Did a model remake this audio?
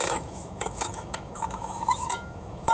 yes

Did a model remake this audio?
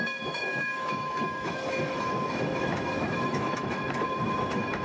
yes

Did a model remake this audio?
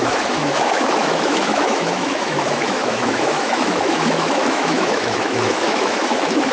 yes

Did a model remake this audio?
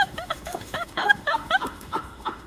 yes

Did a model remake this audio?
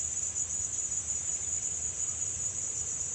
no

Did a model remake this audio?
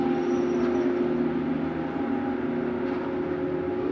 no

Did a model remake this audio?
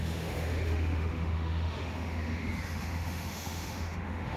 yes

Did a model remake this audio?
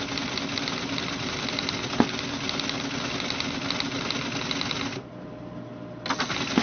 no